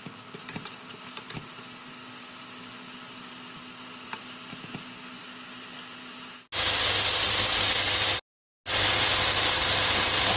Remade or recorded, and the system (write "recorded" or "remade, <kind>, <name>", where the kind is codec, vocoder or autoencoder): recorded